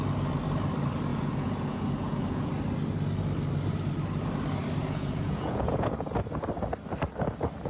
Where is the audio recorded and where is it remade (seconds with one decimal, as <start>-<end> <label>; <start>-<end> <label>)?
0.0-1.1 recorded; 1.1-2.5 remade; 2.5-4.8 recorded; 4.8-6.4 remade; 6.4-7.7 recorded